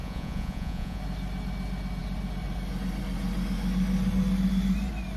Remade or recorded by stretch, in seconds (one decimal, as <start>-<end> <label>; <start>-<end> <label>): 0.0-1.0 remade; 1.0-5.2 recorded